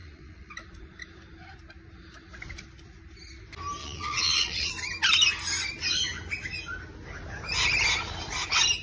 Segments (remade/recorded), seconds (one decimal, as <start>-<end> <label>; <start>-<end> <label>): 0.0-0.5 remade; 0.5-3.8 recorded; 3.8-4.7 remade; 4.7-8.8 recorded